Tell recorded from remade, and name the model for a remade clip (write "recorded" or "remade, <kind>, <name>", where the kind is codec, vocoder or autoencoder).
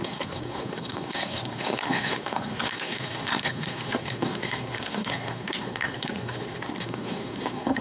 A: remade, codec, SNAC